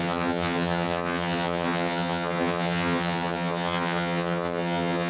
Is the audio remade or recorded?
remade